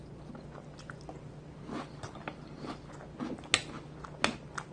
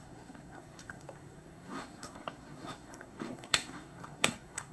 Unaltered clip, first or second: first